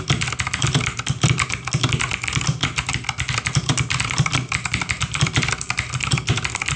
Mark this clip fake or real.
real